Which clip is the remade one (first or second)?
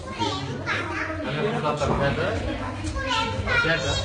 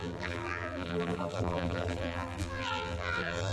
second